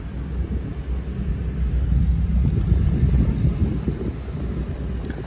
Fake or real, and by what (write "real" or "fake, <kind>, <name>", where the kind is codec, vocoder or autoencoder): real